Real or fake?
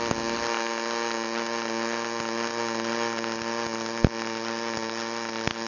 real